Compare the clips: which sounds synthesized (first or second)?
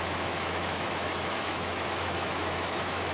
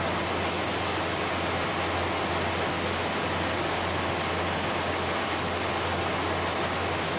first